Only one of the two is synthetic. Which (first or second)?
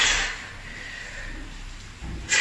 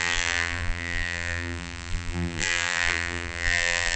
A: second